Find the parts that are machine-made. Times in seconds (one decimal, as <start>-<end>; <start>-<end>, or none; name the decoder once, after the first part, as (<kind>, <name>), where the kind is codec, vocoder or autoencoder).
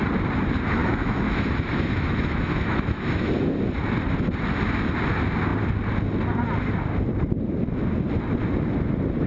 0.8-3.3 (autoencoder, DAC-VAE)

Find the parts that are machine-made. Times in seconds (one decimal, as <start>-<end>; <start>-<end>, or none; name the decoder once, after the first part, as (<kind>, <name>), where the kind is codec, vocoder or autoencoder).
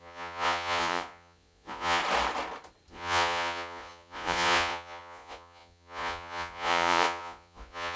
0.0-2.0 (vocoder, Vocos); 2.9-8.0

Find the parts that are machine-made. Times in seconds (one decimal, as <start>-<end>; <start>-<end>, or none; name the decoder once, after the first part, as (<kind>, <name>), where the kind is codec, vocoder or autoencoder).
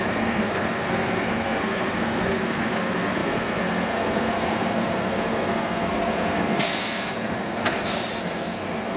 0.0-7.6 (codec, SNAC); 8.2-9.0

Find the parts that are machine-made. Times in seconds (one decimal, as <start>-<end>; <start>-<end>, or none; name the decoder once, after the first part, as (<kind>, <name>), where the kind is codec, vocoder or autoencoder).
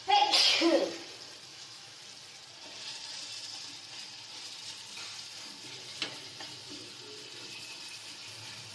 1.5-2.0 (autoencoder, DAC-VAE)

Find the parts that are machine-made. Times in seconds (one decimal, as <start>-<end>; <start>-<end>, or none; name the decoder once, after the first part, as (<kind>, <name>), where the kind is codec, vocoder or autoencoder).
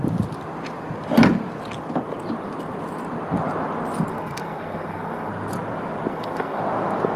4.1-5.3 (codec, SNAC); 6.1-6.6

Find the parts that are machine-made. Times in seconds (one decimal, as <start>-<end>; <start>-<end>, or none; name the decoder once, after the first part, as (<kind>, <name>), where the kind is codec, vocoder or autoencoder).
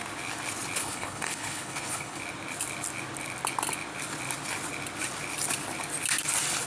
0.8-2.2 (codec, HILCodec)